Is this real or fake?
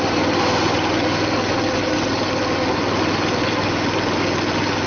real